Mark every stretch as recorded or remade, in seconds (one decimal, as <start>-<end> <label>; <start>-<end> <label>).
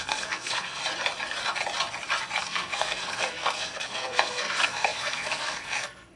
0.0-0.8 remade; 0.8-2.4 recorded; 2.4-6.2 remade